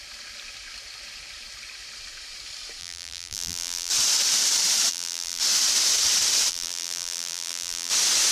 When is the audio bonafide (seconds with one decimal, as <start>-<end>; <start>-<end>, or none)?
0.0-2.8; 3.9-4.9; 5.4-6.5; 7.9-8.3